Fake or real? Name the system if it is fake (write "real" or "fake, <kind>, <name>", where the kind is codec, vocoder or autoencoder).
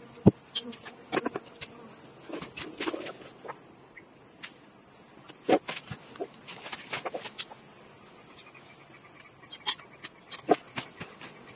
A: real